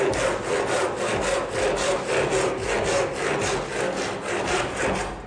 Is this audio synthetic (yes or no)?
no